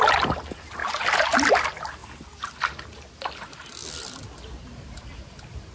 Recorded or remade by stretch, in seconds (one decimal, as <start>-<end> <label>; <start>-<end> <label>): 0.0-5.7 recorded